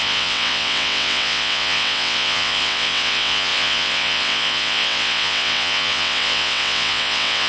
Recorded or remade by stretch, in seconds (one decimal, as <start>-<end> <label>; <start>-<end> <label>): 0.0-7.5 remade